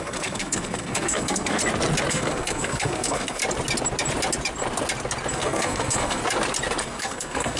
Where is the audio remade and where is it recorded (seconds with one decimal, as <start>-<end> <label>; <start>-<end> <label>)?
0.0-1.6 remade; 1.6-2.1 recorded; 2.1-3.4 remade; 3.4-5.3 recorded; 5.3-6.2 remade; 6.2-6.8 recorded; 6.8-7.6 remade